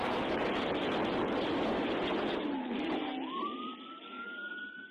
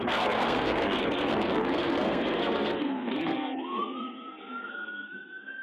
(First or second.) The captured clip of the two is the first